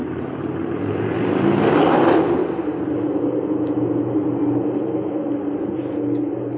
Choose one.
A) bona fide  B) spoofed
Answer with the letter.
A